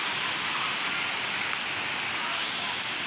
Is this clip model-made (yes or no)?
no